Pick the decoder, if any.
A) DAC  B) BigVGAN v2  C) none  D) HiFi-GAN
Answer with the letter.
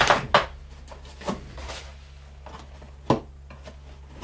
C